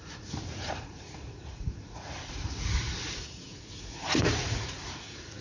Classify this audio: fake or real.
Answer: fake